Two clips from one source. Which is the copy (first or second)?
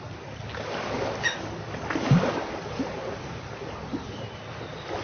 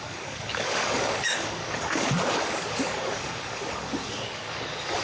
second